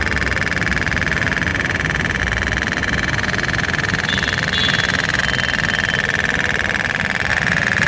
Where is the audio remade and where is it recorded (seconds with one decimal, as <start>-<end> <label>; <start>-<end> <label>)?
0.0-1.5 recorded; 1.5-2.2 remade; 2.2-2.8 recorded; 2.8-4.1 remade; 4.1-4.6 recorded; 4.6-5.2 remade; 5.2-7.3 recorded; 7.3-7.9 remade